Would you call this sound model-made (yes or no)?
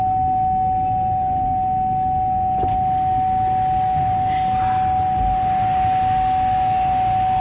no